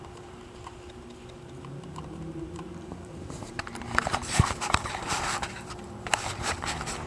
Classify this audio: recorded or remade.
remade